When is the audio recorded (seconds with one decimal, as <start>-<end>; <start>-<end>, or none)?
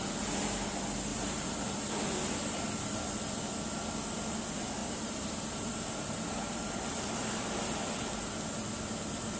0.0-1.1; 1.9-4.8; 7.1-9.4